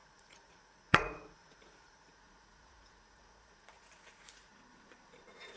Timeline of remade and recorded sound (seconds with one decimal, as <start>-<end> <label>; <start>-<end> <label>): 0.0-4.5 remade; 4.5-5.6 recorded